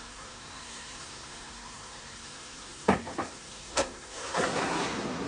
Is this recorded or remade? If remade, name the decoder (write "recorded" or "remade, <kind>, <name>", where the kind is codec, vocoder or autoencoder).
remade, codec, SNAC